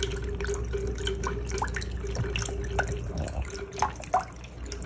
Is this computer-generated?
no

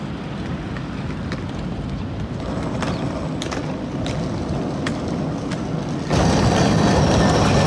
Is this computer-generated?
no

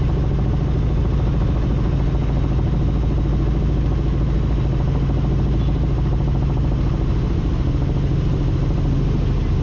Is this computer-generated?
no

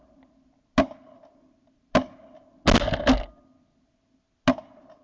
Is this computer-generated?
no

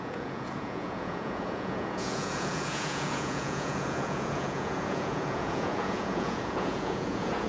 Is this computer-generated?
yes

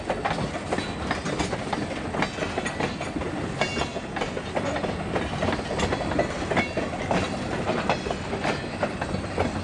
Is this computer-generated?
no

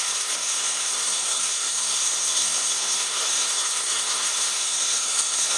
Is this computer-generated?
yes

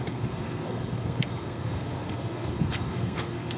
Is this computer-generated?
yes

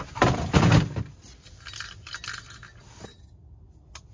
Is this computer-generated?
no